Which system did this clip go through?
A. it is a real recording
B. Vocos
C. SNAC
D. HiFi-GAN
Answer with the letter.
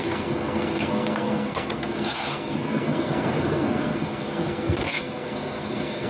C